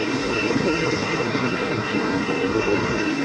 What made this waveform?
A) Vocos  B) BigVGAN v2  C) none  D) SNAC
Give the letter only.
D